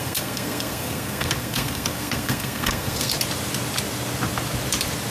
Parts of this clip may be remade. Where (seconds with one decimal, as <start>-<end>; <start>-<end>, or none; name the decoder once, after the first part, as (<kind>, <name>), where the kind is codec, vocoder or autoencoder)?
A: 0.0-3.1 (codec, SNAC)